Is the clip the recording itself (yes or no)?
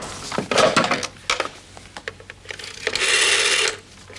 yes